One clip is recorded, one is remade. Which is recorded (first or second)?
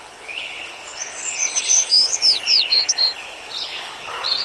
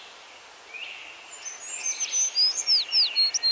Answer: second